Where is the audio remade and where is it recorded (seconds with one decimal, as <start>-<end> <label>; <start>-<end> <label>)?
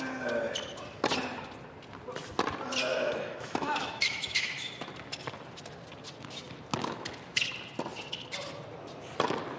0.0-2.9 recorded; 2.9-4.7 remade; 4.7-9.6 recorded